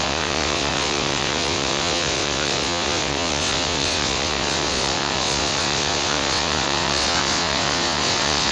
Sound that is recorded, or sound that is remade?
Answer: remade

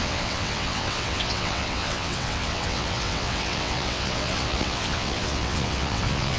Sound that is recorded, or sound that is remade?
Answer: remade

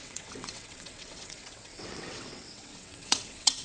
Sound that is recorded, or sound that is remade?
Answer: remade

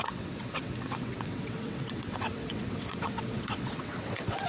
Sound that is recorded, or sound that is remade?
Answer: remade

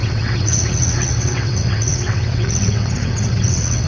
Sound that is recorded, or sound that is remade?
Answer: remade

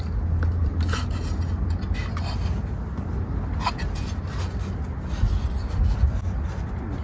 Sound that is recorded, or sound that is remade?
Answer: recorded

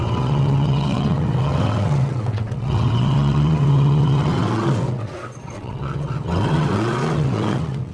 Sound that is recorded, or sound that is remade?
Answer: remade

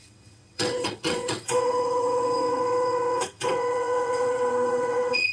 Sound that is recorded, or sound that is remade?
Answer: remade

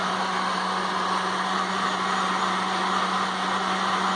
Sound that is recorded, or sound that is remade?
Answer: recorded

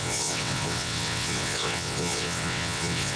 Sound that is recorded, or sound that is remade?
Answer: remade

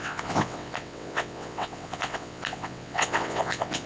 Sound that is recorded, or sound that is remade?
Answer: remade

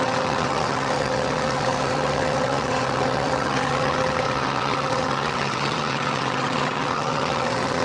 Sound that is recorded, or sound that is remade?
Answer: remade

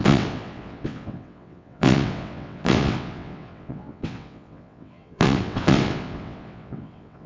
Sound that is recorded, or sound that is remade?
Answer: remade